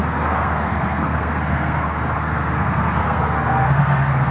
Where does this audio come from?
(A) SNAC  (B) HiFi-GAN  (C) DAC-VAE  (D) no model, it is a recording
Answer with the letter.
A